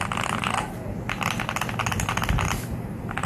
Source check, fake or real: real